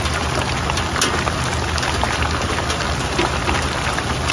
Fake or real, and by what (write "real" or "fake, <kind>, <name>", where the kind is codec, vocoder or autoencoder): real